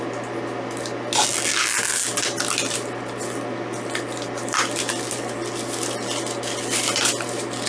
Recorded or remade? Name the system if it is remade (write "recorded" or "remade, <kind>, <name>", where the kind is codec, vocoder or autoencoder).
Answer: recorded